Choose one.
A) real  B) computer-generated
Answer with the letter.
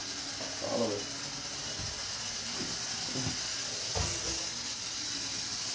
A